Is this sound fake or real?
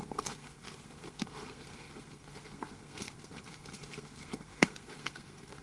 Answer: fake